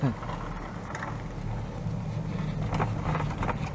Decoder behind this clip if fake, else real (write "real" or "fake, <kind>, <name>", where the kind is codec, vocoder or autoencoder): real